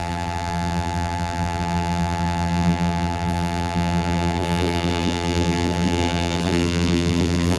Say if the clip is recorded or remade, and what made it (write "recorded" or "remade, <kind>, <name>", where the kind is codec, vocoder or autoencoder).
remade, vocoder, BigVGAN v2